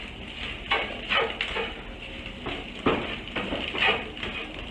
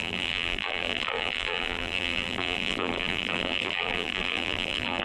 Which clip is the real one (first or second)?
first